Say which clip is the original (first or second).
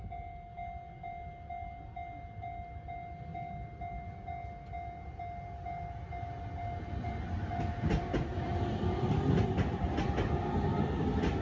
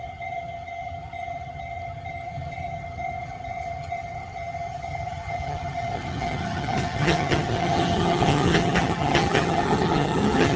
first